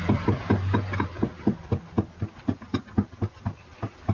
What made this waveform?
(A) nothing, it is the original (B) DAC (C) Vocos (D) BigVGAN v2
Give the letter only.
A